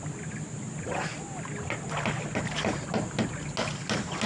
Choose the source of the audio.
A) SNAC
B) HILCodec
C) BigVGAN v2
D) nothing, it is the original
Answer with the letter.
D